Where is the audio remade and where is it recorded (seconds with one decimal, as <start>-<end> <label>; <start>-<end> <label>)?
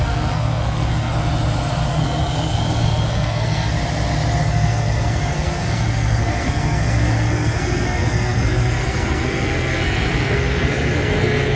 0.0-1.1 remade; 1.1-1.9 recorded; 1.9-3.8 remade; 3.8-4.4 recorded; 4.4-11.6 remade